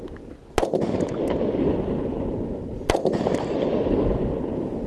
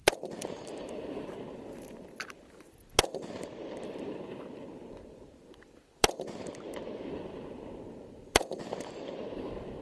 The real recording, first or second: first